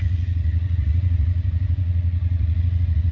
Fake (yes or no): yes